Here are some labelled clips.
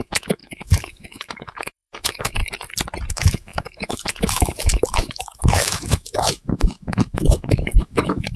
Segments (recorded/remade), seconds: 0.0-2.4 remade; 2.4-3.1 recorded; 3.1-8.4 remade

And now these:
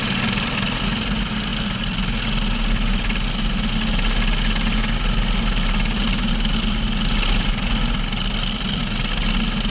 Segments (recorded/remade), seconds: 0.0-9.7 recorded

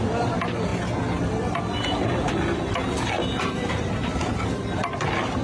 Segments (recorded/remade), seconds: 0.0-5.4 recorded